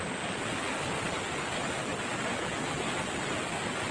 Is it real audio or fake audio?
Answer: real